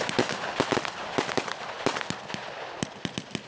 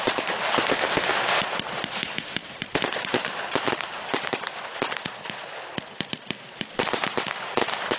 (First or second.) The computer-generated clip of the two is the second